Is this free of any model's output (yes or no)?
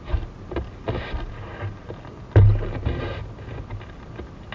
yes